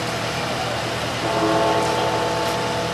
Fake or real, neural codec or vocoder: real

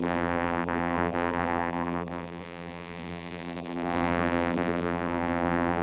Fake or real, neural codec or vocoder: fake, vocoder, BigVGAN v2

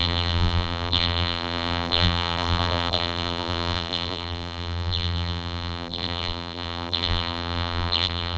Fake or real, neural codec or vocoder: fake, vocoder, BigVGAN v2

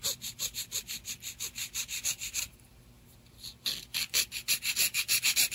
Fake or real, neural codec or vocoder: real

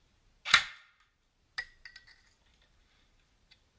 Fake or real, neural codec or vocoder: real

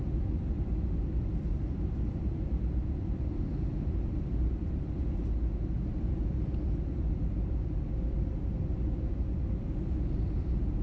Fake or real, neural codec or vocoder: fake, vocoder, BigVGAN v2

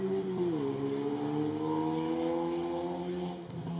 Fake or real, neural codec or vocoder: real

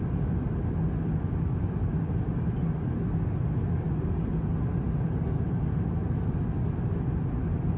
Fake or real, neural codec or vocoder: real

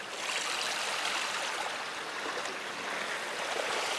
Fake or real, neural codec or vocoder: real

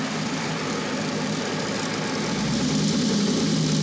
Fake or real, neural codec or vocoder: real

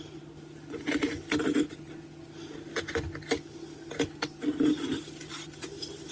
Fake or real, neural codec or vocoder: real